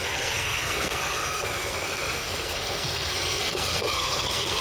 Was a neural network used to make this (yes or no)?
yes